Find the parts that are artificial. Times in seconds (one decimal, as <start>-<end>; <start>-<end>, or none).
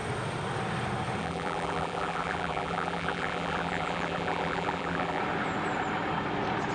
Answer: 1.2-5.2